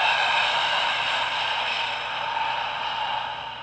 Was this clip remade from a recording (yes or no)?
no